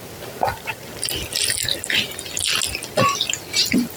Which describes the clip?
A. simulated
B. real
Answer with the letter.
B